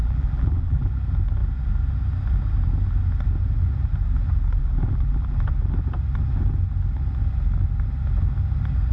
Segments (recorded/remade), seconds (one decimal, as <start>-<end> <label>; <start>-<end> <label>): 0.0-0.9 remade; 0.9-4.6 recorded; 4.6-5.5 remade; 5.5-8.9 recorded